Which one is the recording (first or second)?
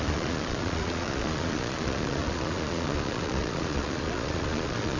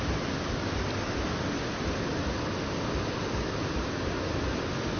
second